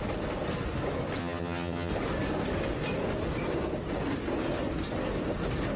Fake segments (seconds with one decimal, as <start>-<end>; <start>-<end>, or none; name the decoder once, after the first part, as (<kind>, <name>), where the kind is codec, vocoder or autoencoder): 1.2-1.9 (vocoder, HiFi-GAN)